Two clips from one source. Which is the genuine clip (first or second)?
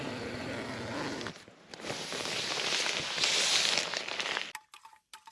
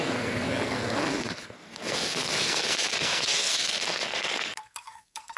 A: first